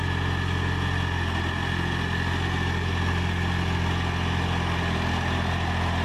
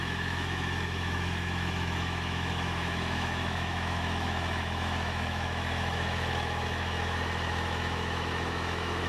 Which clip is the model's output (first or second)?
second